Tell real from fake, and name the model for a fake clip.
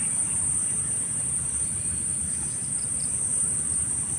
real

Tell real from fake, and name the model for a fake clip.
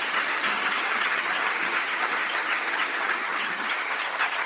fake, vocoder, HiFi-GAN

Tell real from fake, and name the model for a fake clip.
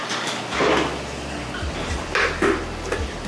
real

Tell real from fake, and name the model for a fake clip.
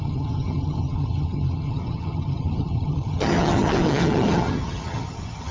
fake, vocoder, HiFi-GAN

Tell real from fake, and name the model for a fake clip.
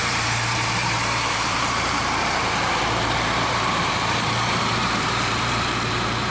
fake, vocoder, BigVGAN v2